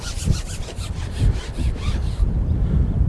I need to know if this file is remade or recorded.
recorded